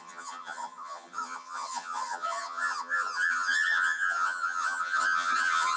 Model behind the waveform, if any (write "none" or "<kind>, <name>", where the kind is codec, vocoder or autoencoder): vocoder, HiFi-GAN